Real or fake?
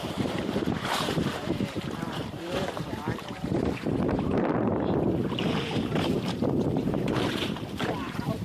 fake